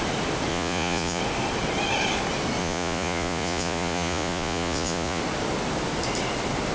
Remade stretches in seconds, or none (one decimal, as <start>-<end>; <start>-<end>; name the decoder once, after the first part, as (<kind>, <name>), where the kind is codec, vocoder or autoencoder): 0.5-1.2 (vocoder, Vocos); 2.6-5.2